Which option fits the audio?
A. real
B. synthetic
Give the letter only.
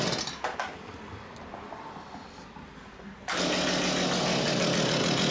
A